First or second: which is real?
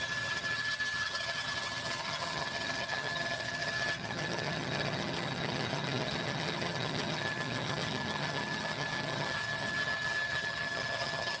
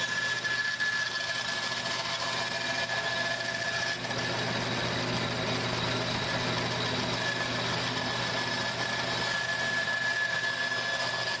second